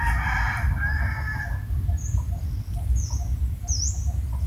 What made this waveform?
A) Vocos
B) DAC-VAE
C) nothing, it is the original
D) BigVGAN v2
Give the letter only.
C